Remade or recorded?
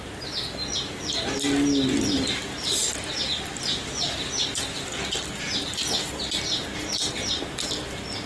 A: recorded